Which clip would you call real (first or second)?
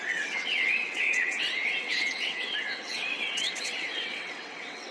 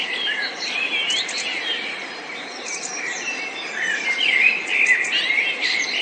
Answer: second